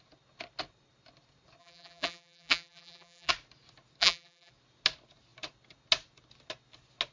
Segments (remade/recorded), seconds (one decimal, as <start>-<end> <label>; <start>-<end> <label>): 0.0-1.6 recorded; 1.6-3.3 remade; 3.3-4.0 recorded; 4.0-4.5 remade; 4.5-7.1 recorded